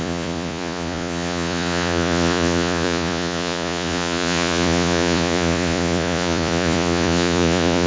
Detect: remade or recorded remade